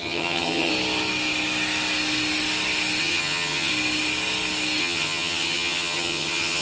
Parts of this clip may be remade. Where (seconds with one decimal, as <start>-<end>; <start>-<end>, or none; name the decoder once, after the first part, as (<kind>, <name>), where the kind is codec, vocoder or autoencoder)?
0.0-0.7 (vocoder, HiFi-GAN); 3.0-3.7; 4.8-6.6